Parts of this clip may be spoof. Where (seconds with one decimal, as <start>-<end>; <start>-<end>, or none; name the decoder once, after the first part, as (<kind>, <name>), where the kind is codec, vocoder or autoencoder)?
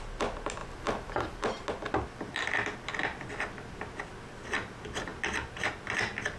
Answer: none